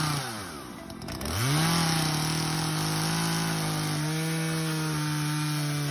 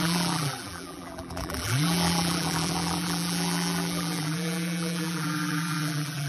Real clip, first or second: first